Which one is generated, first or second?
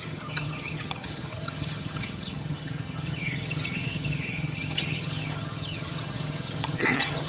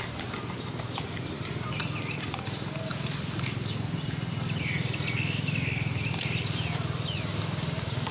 first